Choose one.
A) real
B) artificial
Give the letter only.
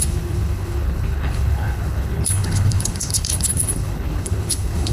B